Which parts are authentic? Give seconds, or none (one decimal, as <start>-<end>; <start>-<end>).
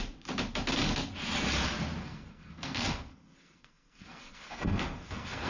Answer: 0.0-2.0